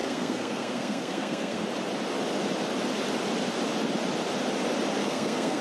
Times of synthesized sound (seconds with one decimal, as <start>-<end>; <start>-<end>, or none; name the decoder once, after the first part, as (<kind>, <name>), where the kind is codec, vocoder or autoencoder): 0.0-1.6 (codec, SNAC); 5.0-5.6